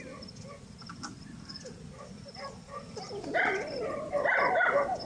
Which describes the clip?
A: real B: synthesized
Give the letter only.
A